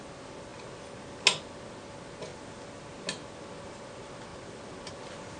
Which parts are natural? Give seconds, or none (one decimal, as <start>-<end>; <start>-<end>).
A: 0.0-5.4